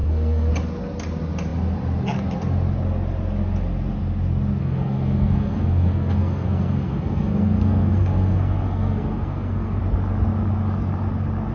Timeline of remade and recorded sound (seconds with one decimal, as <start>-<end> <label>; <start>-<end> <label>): 0.0-0.5 remade; 0.5-4.6 recorded; 4.6-9.8 remade; 9.8-11.5 recorded